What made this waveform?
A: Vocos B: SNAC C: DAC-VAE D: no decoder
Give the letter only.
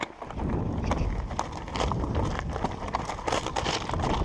D